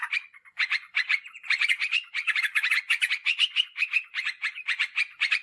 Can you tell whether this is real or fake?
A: fake